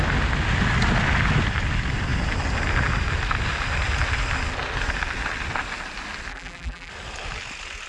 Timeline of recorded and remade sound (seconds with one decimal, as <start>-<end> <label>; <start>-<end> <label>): 0.0-6.3 recorded; 6.3-6.9 remade; 6.9-7.9 recorded